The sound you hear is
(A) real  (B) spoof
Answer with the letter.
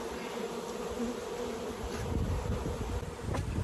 A